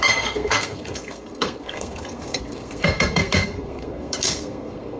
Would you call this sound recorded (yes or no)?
no